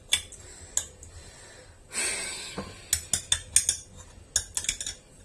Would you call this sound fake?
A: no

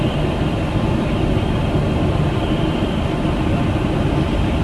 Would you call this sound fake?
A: no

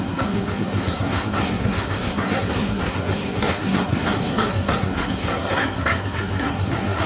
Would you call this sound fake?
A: yes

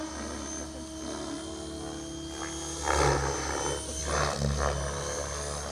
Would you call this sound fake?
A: no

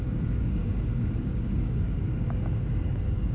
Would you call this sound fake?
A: yes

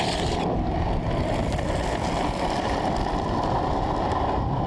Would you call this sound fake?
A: no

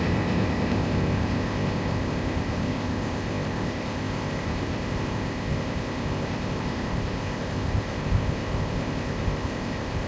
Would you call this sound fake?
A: yes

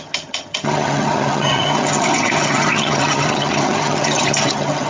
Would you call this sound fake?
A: yes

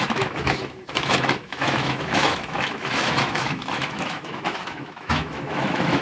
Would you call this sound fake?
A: yes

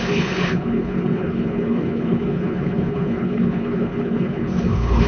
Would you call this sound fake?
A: yes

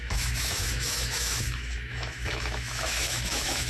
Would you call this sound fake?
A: yes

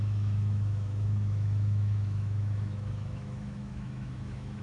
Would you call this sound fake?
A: yes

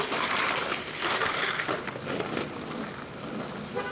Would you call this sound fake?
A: no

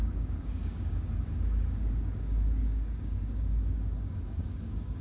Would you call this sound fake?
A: yes